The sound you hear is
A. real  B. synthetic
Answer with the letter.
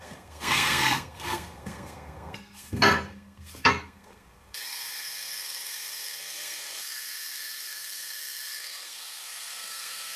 B